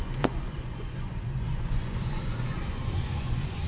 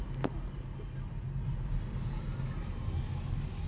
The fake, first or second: first